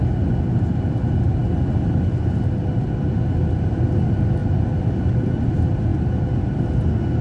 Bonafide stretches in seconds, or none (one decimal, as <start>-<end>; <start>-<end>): 0.0-7.2